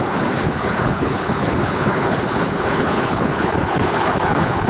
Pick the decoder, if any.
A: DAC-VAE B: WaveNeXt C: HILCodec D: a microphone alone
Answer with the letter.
C